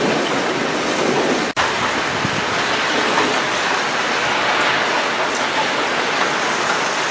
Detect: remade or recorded recorded